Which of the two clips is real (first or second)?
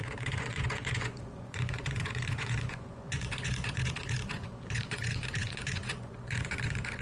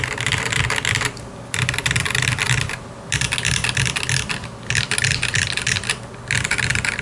second